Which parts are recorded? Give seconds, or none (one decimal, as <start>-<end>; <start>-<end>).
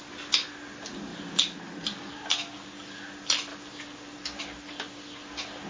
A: 0.0-5.7